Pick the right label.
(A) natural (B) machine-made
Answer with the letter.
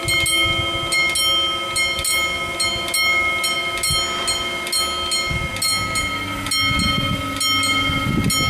A